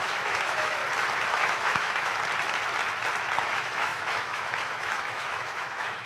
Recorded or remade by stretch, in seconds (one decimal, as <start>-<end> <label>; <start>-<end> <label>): 0.0-0.8 remade; 0.8-1.3 recorded; 1.3-2.1 remade; 2.1-3.4 recorded; 3.4-6.1 remade